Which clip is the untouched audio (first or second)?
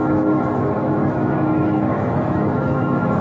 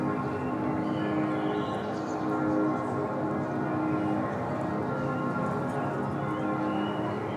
second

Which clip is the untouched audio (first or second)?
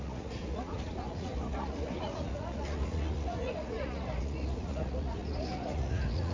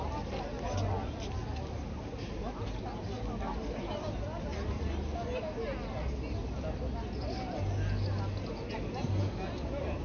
second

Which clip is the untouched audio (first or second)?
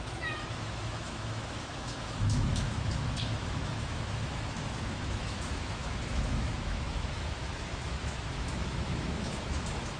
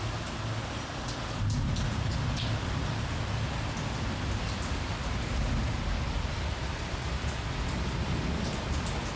second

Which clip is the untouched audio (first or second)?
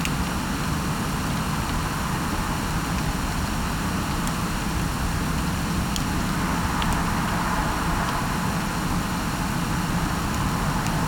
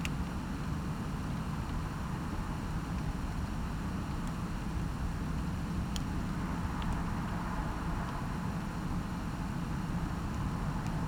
first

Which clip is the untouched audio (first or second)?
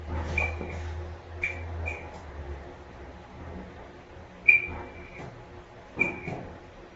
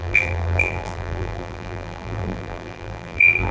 first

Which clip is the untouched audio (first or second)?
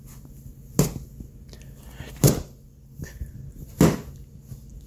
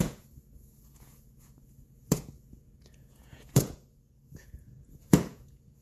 first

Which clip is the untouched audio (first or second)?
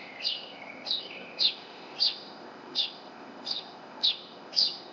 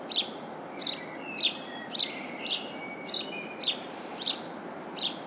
second